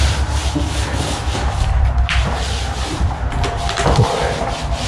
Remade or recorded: recorded